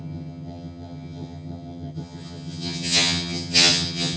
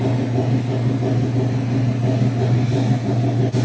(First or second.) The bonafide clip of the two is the second